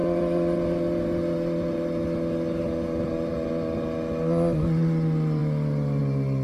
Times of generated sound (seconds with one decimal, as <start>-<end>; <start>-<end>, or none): none